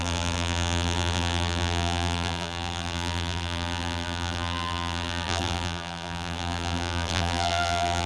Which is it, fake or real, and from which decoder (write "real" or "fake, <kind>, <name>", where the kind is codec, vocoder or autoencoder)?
fake, vocoder, BigVGAN v2